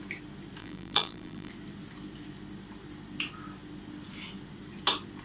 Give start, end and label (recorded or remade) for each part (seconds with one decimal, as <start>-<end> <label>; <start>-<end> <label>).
0.0-0.6 recorded; 0.6-1.5 remade; 1.5-5.2 recorded